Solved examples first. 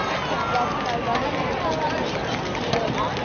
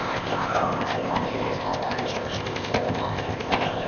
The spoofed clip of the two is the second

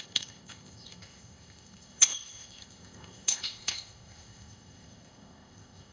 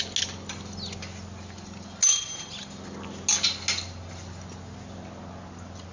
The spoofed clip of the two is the first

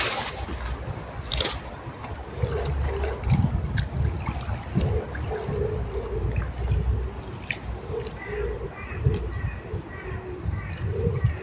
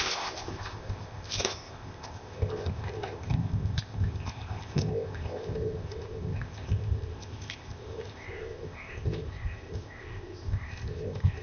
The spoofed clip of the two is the second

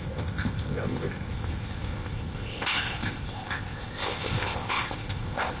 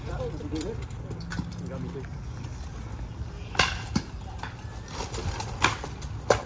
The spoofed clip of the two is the first